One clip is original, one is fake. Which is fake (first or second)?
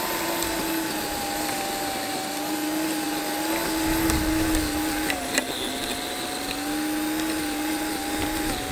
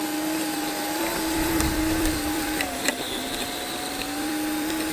second